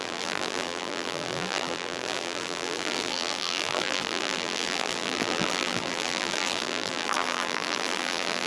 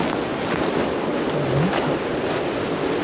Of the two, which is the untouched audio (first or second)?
second